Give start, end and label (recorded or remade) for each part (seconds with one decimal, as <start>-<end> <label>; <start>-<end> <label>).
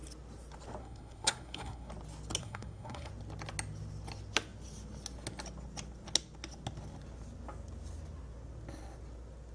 0.0-0.8 recorded; 0.8-1.9 remade; 1.9-2.4 recorded; 2.4-3.1 remade; 3.1-9.5 recorded